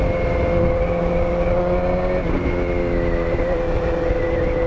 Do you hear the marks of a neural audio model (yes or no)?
no